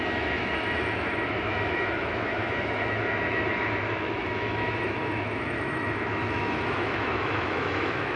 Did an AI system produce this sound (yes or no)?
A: yes